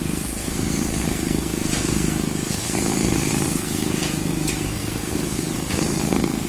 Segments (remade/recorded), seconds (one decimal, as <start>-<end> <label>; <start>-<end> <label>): 0.0-6.5 remade